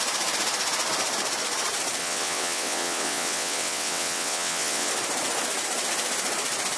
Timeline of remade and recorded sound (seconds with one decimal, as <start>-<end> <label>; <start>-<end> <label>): 0.0-2.0 recorded; 2.0-4.9 remade; 4.9-6.8 recorded